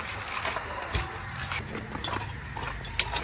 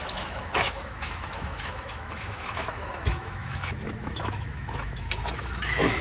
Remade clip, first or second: second